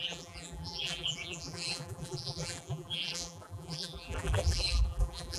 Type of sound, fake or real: fake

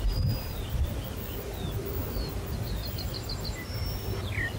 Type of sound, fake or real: real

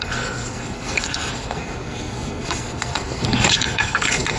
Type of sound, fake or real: fake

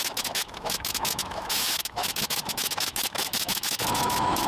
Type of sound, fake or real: fake